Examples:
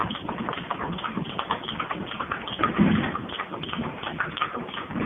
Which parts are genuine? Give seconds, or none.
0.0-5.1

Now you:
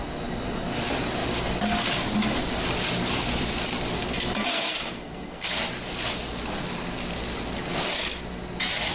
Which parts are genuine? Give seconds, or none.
0.0-4.5; 5.5-8.9

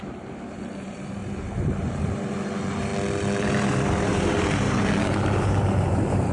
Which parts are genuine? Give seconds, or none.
2.9-3.4

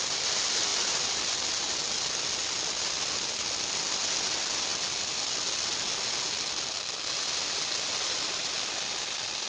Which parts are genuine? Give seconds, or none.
0.0-9.5

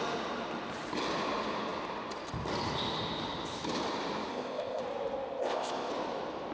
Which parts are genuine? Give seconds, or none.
0.0-4.3; 4.8-5.4; 5.9-6.5

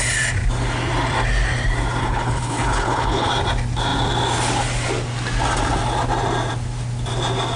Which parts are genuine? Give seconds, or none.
0.0-2.0; 3.3-7.6

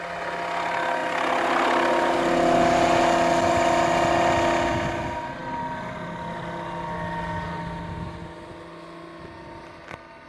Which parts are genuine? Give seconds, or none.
0.0-10.3